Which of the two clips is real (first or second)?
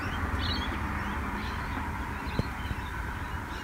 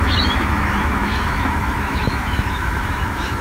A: first